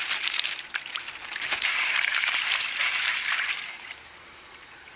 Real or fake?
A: fake